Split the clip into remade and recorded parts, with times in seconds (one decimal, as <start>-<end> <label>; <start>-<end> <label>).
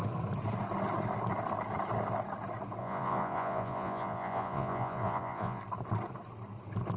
0.0-2.8 recorded; 2.8-5.6 remade; 5.6-7.0 recorded